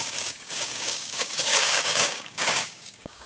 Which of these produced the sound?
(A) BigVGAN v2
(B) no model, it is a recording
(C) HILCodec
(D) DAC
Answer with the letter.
D